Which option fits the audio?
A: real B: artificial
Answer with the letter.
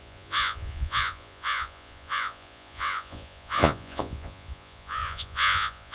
B